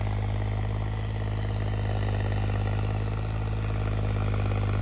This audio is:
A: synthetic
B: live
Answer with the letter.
B